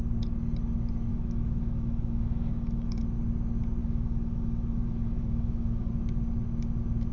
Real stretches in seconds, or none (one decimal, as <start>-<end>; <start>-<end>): 0.0-1.1; 3.0-3.8; 5.9-7.1